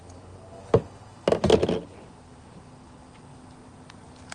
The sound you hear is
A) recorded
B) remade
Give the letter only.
A